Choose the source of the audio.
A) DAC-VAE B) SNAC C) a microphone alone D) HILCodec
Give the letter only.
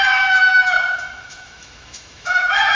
A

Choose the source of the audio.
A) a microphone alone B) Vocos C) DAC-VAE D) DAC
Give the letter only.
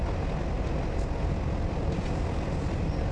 A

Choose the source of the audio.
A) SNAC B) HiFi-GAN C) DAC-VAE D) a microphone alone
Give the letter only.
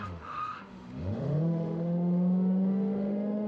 C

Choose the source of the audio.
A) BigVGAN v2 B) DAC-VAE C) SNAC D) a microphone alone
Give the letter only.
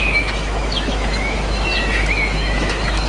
B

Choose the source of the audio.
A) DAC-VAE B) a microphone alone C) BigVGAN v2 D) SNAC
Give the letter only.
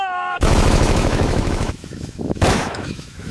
A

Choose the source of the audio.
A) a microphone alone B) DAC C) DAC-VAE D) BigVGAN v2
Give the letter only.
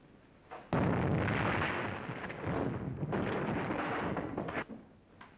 A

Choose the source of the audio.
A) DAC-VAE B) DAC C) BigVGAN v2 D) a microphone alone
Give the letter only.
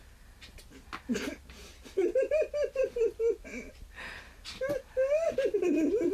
D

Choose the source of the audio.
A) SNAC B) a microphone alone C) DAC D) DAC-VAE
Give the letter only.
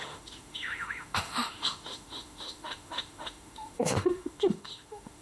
D